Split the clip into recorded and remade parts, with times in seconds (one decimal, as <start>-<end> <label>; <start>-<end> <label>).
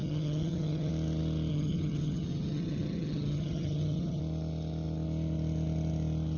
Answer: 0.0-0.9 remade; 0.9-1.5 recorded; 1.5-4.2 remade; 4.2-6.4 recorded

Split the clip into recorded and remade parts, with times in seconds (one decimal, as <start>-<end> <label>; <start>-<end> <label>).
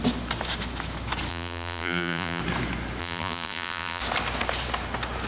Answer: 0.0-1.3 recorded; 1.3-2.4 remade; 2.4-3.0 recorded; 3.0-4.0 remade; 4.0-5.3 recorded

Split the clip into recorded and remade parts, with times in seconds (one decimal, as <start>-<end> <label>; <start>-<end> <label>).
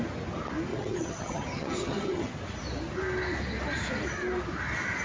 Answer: 0.0-0.7 recorded; 0.7-2.3 remade; 2.3-5.0 recorded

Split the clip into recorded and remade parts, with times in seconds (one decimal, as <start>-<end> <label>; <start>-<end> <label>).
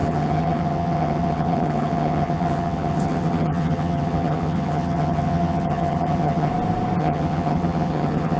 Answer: 0.0-6.5 remade; 6.5-7.0 recorded; 7.0-8.4 remade